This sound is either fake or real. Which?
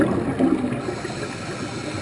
real